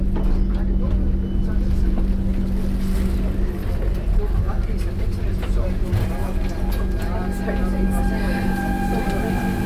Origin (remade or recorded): recorded